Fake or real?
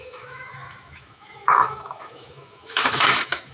fake